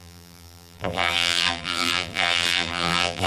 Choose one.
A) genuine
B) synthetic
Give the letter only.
B